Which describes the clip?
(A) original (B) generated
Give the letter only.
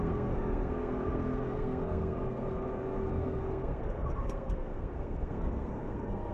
B